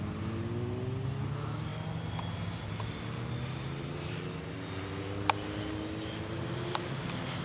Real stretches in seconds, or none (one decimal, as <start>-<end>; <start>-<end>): 0.0-7.4